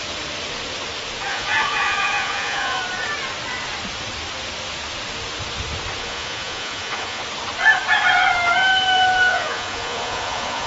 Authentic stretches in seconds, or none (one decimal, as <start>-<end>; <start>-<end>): 0.0-1.3; 2.8-6.0; 7.2-9.3

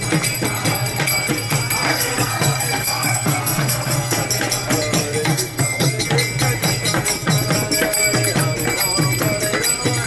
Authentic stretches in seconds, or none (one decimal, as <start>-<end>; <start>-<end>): 0.0-1.9; 4.2-5.3; 6.0-10.1

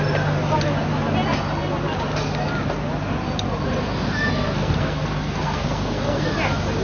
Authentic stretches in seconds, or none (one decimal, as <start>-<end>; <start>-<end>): 0.0-4.3; 6.3-6.8

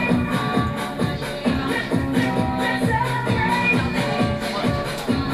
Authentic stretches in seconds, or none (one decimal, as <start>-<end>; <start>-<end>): 1.6-3.1; 3.7-4.7

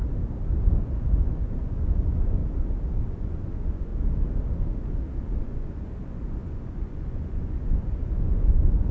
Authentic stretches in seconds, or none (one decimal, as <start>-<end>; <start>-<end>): 0.0-0.6; 2.4-3.0; 3.9-5.4